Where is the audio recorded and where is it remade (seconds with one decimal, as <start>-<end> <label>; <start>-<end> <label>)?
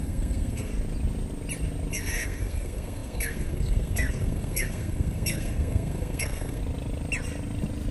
0.0-0.7 remade; 0.7-1.9 recorded; 1.9-6.6 remade; 6.6-7.9 recorded